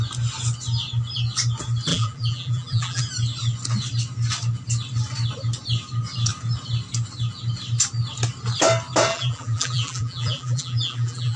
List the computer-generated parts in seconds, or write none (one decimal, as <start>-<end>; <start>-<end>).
1.9-3.0; 9.1-11.4